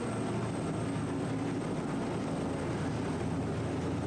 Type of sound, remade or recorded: recorded